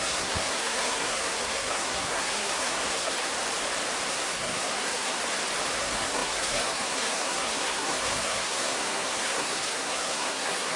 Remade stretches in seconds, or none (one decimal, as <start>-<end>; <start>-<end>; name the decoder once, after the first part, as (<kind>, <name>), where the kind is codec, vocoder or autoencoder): 0.0-3.3 (codec, SNAC); 4.1-5.2; 5.8-10.8